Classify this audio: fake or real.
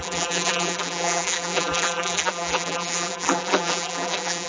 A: fake